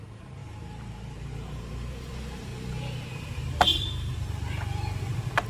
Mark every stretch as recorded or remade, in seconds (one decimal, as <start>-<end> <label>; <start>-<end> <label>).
0.0-2.5 remade; 2.5-3.1 recorded; 3.1-3.7 remade; 3.7-5.0 recorded; 5.0-5.5 remade